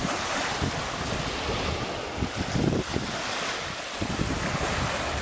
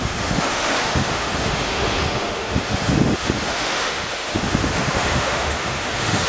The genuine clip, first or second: first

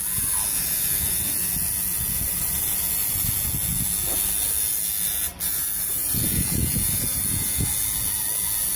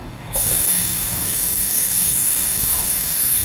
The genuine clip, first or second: first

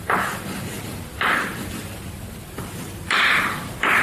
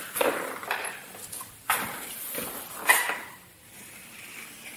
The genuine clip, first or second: first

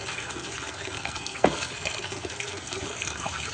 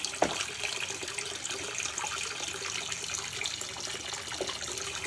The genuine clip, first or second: second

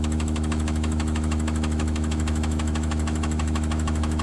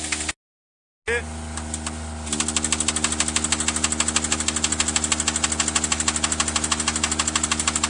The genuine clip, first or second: second